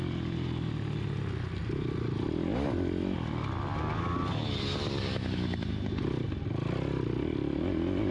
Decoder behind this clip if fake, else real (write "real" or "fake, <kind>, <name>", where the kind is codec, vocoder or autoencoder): real